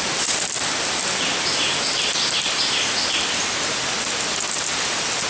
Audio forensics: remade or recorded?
recorded